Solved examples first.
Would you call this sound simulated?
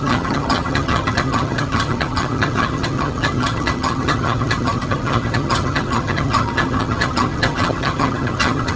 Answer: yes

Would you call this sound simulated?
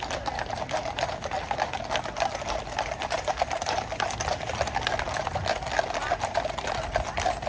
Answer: no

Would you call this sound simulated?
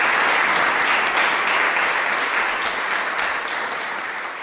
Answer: no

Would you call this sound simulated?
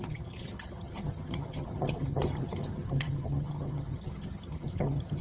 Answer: yes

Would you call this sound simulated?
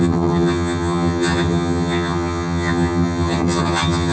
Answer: yes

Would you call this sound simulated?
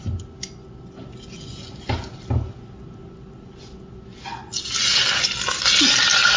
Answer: no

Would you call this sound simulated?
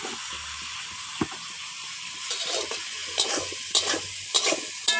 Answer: no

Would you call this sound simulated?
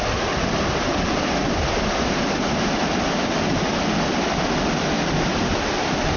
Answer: no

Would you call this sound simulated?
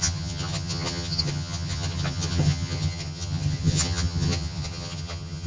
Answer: yes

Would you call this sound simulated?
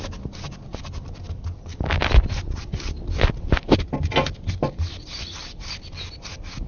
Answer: no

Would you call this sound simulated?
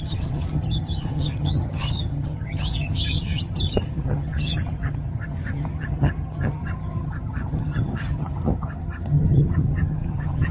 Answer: yes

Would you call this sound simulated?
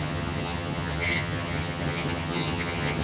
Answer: yes